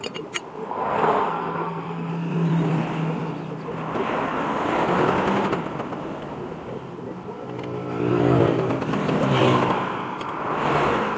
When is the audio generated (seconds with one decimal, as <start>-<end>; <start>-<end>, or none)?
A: 0.7-2.1